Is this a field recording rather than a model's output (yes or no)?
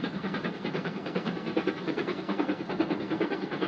no